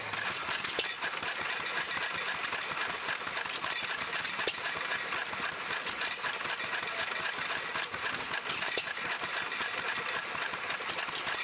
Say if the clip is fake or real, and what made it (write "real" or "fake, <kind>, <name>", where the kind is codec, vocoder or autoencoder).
real